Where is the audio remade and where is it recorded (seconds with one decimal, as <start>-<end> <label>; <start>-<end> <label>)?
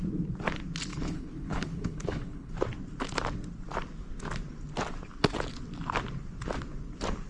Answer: 0.0-0.9 recorded; 0.9-2.5 remade; 2.5-7.3 recorded